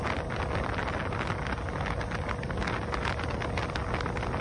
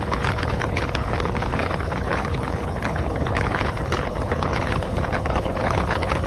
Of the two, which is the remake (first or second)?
second